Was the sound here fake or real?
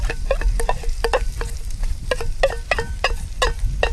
real